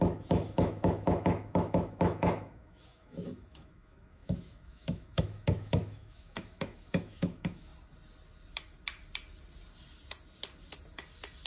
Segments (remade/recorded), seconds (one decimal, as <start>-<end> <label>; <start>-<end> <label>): 0.0-7.7 remade; 7.7-11.5 recorded